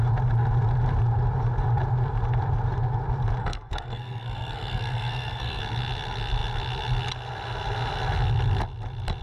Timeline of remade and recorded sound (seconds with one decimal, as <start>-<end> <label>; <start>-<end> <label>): 0.0-3.4 recorded; 3.4-5.6 remade; 5.6-9.2 recorded

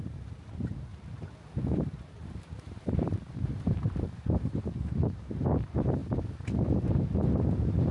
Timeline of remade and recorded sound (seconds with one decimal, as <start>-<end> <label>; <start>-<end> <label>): 0.0-0.9 remade; 0.9-1.7 recorded; 1.7-6.0 remade; 6.0-7.9 recorded

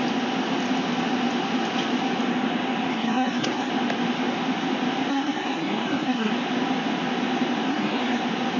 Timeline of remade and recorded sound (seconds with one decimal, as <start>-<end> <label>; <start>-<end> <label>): 0.0-2.9 recorded; 2.9-3.7 remade; 3.7-5.1 recorded; 5.1-6.3 remade; 6.3-7.7 recorded; 7.7-8.2 remade; 8.2-8.6 recorded

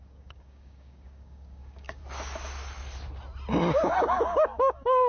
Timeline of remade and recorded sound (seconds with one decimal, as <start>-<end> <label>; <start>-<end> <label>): 0.0-2.0 remade; 2.0-3.8 recorded; 3.8-5.1 remade

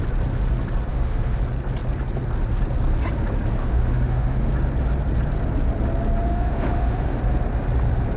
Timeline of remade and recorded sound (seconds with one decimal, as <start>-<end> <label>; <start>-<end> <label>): 0.0-0.9 recorded; 0.9-1.4 remade; 1.4-3.6 recorded; 3.6-4.5 remade; 4.5-6.3 recorded; 6.3-7.2 remade; 7.2-8.2 recorded

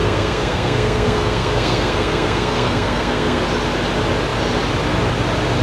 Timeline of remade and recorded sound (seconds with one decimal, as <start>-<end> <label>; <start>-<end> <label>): 0.0-3.4 remade; 3.4-5.6 recorded

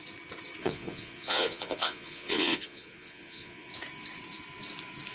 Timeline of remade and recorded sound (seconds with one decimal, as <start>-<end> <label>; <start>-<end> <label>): 0.0-0.6 recorded; 0.6-3.7 remade; 3.7-5.1 recorded

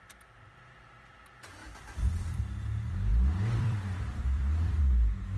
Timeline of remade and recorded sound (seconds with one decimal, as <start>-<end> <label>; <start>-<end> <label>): 0.0-1.6 recorded; 1.6-2.4 remade; 2.4-3.1 recorded; 3.1-4.8 remade; 4.8-5.4 recorded